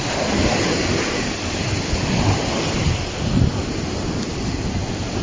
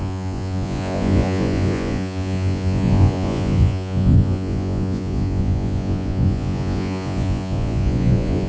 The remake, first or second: second